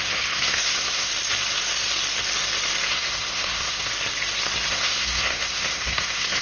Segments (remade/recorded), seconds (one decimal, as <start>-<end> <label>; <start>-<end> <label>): 0.0-1.1 remade; 1.1-2.9 recorded; 2.9-3.9 remade; 3.9-4.7 recorded; 4.7-6.4 remade